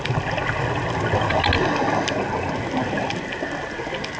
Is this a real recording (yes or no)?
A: yes